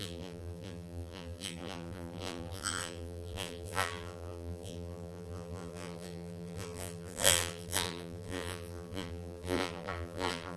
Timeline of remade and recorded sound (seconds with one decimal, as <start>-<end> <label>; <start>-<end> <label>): 0.0-10.6 remade